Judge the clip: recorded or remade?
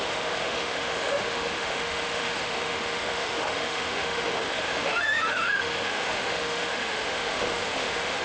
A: remade